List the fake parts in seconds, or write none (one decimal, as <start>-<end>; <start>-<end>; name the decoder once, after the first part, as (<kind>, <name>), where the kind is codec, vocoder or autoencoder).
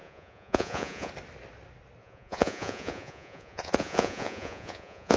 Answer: 0.0-1.1 (vocoder, Vocos); 2.0-5.2